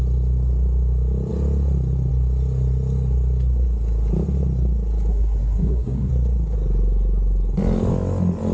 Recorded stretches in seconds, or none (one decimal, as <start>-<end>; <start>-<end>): 0.0-5.1; 6.1-8.5